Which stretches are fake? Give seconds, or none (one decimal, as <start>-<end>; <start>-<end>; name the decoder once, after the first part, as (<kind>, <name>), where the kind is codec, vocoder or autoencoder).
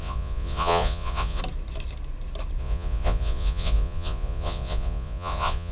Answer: 0.0-1.4 (vocoder, Vocos); 2.6-5.7